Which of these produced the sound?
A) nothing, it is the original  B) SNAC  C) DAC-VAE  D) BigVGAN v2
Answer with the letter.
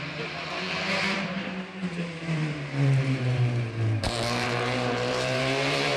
D